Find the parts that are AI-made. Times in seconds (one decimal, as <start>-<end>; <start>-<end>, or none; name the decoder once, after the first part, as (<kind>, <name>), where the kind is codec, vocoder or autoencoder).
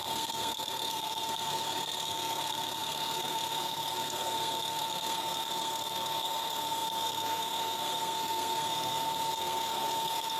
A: 0.0-10.4 (codec, SNAC)